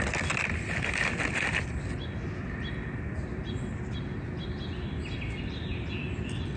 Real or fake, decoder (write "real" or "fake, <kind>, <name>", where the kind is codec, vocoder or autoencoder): real